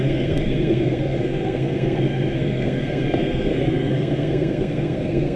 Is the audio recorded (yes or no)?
no